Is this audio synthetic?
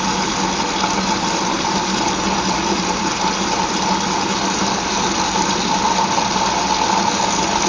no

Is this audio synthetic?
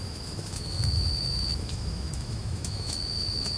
yes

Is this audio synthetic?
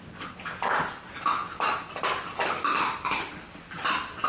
no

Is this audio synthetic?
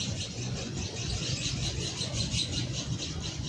yes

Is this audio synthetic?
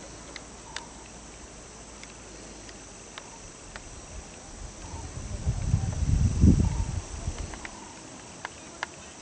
no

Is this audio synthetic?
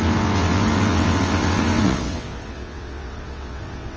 yes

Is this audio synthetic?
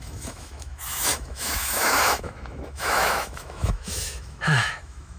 yes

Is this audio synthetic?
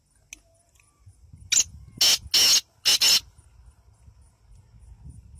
no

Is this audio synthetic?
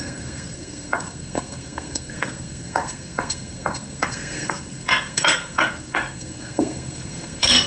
yes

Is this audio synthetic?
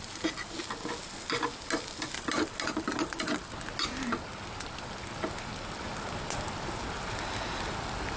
no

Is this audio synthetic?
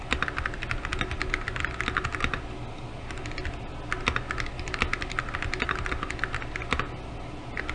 no